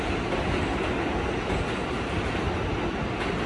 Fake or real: real